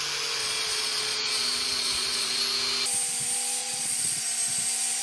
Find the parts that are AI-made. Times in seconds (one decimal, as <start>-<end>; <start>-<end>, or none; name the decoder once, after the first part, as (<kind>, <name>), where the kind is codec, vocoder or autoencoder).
0.4-2.4 (vocoder, Vocos); 3.6-4.2